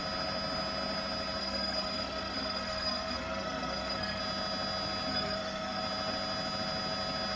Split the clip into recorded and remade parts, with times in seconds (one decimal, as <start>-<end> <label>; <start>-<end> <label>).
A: 0.0-1.4 recorded; 1.4-4.2 remade; 4.2-5.1 recorded; 5.1-5.8 remade; 5.8-7.4 recorded